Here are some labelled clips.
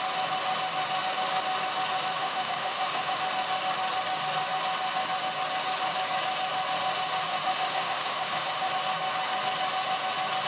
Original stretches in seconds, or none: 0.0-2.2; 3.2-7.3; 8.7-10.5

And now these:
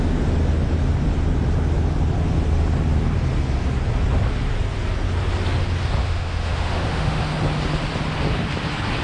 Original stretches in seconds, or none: 0.0-6.0; 7.2-9.0

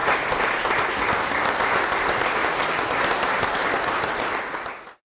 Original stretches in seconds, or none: 0.0-5.1

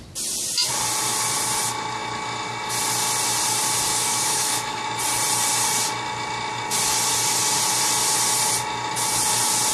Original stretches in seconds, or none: 0.0-3.9; 4.8-9.7

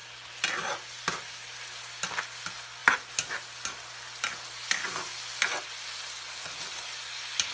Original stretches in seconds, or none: 0.0-7.5

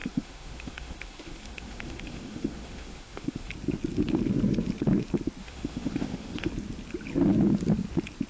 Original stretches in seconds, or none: 3.5-5.4; 6.5-8.3